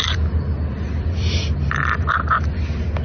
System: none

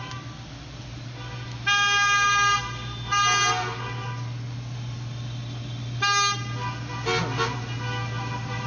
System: none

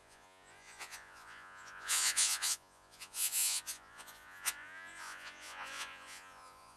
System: vocoder, Vocos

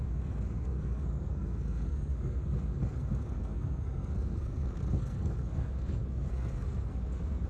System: codec, SNAC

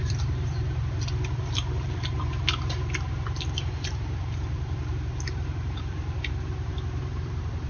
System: vocoder, BigVGAN v2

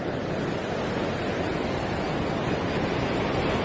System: none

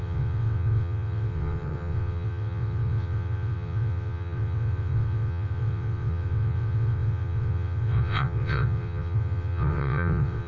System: vocoder, WaveNeXt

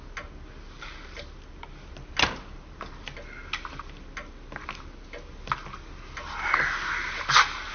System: none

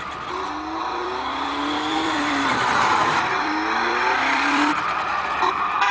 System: vocoder, BigVGAN v2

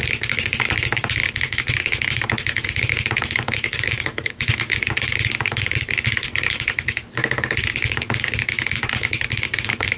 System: codec, DAC